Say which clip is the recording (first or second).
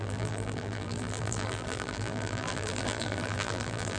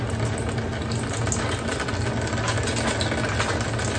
second